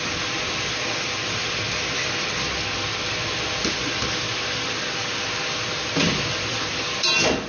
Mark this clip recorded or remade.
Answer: recorded